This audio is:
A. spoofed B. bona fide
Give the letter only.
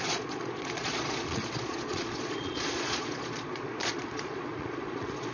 A